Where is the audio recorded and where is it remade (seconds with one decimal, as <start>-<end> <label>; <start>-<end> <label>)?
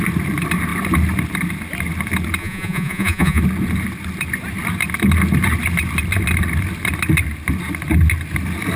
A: 0.0-2.4 recorded; 2.4-3.4 remade; 3.4-8.8 recorded